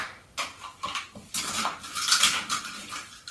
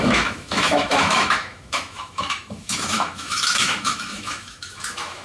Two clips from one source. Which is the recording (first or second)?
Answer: first